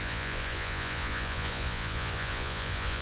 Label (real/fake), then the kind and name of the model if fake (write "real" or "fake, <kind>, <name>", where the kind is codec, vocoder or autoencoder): fake, vocoder, Vocos